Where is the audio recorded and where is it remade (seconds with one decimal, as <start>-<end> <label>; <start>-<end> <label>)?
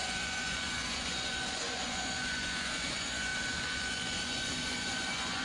0.0-5.4 remade